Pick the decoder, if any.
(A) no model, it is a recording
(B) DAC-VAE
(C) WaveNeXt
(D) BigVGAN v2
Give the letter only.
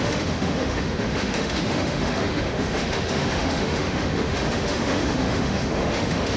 B